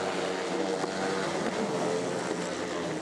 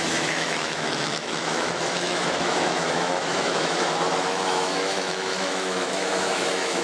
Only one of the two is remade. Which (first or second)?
second